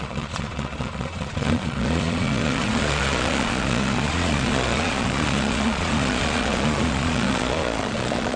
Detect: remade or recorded remade